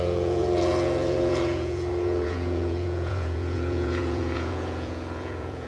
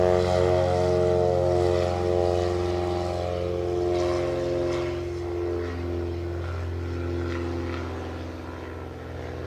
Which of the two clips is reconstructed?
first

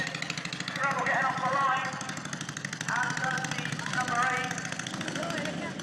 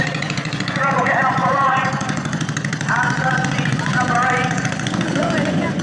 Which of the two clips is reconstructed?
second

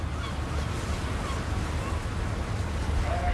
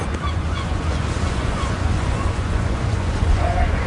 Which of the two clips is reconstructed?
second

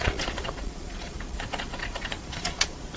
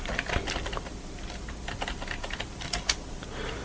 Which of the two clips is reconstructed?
first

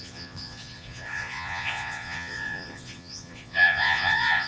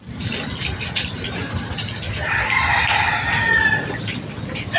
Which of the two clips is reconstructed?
first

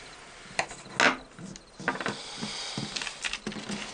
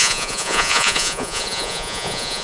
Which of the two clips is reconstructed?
second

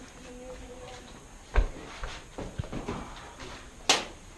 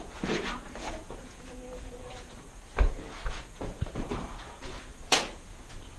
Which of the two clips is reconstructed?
second